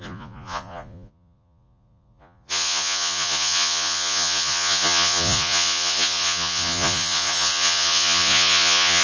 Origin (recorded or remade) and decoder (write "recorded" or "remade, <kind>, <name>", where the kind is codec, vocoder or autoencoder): remade, vocoder, Vocos